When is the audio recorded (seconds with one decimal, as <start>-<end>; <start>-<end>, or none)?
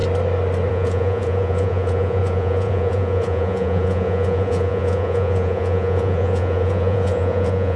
0.0-0.7